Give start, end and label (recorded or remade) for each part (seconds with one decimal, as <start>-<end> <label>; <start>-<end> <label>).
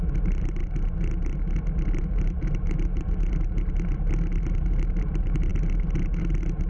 0.0-6.7 recorded